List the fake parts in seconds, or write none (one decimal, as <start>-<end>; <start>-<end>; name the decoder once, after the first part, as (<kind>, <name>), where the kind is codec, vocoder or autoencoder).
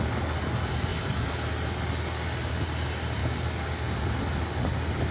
none